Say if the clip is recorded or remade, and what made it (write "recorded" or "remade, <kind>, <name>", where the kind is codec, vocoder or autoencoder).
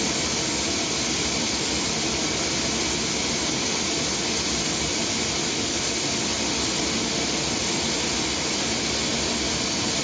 recorded